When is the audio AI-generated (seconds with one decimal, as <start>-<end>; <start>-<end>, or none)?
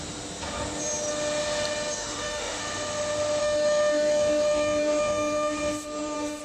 2.0-2.6; 3.4-6.4